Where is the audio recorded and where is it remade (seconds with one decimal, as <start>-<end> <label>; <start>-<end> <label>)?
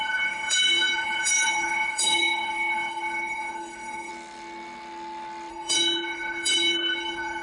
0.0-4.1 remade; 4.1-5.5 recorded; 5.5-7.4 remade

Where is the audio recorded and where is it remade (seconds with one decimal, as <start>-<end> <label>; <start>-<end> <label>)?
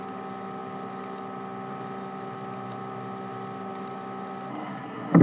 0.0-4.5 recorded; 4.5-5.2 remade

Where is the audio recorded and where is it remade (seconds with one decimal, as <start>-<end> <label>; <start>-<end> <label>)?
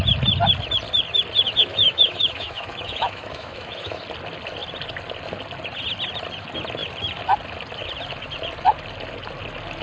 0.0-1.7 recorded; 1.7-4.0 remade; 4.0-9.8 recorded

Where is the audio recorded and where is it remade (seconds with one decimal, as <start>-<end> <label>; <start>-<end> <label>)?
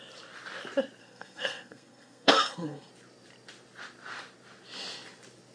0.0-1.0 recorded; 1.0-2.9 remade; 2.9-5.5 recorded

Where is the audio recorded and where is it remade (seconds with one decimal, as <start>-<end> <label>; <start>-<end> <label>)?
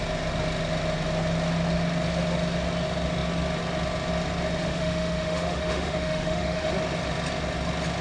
0.0-4.6 recorded; 4.6-6.7 remade; 6.7-8.0 recorded